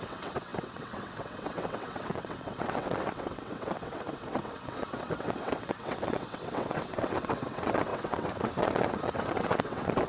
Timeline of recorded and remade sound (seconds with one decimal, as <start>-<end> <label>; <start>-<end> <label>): 0.0-10.1 remade